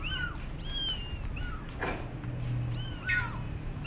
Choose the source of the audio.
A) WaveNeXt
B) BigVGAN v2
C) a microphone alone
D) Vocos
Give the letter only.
C